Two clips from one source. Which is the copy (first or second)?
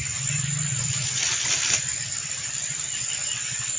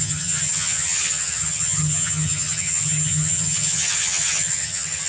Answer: second